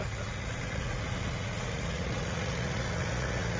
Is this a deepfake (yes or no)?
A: yes